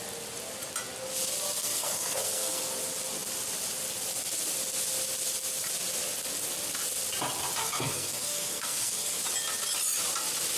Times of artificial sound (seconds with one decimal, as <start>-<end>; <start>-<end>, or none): 1.6-2.6; 7.6-9.2